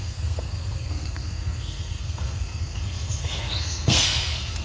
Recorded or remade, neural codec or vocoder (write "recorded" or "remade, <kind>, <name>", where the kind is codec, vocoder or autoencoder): remade, codec, SNAC